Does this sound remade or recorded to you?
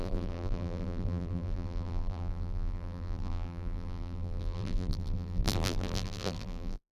remade